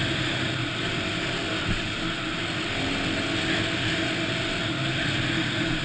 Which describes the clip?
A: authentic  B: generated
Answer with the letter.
A